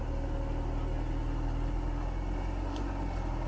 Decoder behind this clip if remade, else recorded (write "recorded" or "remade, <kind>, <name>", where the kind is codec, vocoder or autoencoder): recorded